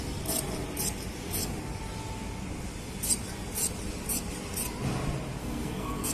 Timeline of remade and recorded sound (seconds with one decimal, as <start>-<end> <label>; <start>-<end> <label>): 0.0-5.4 recorded; 5.4-6.1 remade